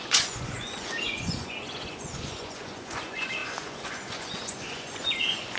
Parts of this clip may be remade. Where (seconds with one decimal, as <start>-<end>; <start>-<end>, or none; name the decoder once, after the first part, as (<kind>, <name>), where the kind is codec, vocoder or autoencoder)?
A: 0.0-5.6 (vocoder, Vocos)